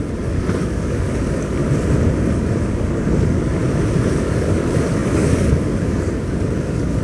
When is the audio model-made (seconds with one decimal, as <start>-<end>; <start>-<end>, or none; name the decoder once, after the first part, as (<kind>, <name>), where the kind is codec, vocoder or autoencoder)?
0.0-1.6 (codec, DAC); 2.3-3.6; 4.1-7.0